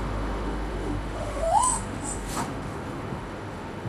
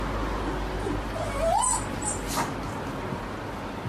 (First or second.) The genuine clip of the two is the second